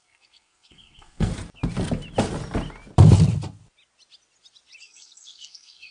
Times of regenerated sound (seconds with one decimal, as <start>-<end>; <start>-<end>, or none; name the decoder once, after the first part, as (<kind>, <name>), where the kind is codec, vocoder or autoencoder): 0.0-1.3 (codec, SNAC); 4.8-5.9